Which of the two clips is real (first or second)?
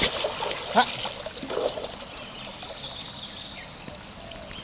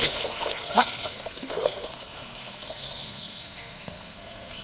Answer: first